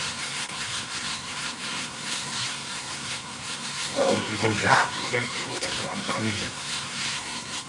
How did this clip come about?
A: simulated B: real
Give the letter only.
A